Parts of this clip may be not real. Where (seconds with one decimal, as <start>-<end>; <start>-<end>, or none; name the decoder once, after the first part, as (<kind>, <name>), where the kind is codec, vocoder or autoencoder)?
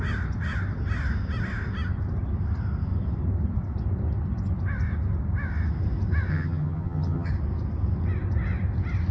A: 6.3-7.3 (vocoder, HiFi-GAN)